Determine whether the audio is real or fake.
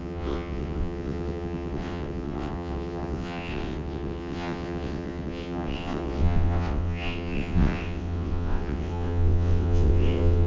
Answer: fake